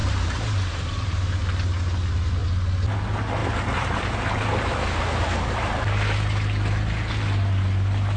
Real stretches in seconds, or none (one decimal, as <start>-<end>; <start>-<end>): 1.4-8.2